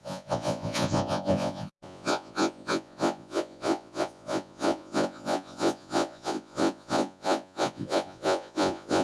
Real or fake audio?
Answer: fake